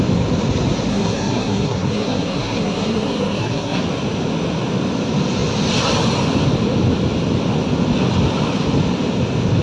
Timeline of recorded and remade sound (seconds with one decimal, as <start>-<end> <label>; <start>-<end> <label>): 0.0-0.9 recorded; 0.9-3.8 remade; 3.8-9.6 recorded